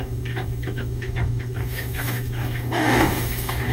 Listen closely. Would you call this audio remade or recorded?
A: remade